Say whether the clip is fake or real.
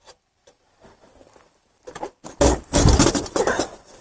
real